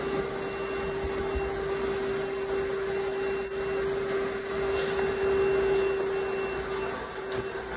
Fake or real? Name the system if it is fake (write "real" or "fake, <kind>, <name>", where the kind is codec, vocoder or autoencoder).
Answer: real